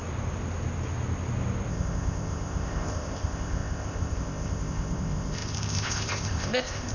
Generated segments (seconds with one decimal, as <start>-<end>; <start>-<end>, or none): 1.7-6.9